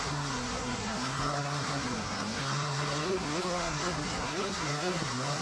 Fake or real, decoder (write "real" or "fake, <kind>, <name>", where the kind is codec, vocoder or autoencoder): fake, codec, SNAC